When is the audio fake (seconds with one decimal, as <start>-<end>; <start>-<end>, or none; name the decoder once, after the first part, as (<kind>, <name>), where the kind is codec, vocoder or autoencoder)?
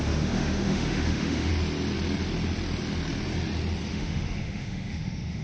0.0-1.5 (autoencoder, DAC-VAE); 3.9-5.4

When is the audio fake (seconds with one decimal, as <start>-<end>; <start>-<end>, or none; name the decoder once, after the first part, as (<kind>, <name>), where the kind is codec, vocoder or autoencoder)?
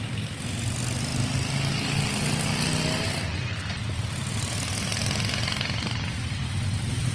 none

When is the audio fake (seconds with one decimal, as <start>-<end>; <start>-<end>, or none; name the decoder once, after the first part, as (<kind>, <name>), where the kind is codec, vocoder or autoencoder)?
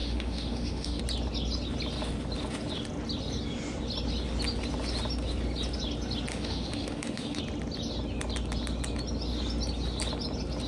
0.0-1.0 (autoencoder, DAC-VAE); 6.3-7.4